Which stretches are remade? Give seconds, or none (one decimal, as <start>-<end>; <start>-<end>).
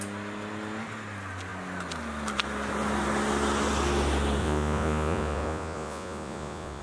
4.4-6.8